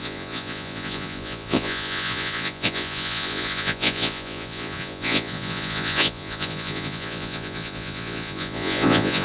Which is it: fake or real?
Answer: fake